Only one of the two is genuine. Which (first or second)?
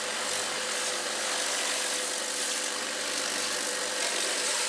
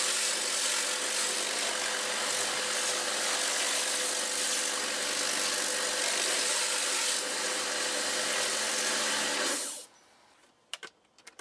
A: second